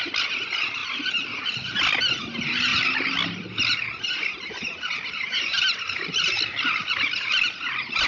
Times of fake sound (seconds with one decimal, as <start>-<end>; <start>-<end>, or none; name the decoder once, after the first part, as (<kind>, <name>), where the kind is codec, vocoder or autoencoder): none